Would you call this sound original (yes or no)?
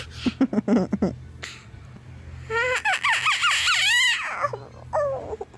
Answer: yes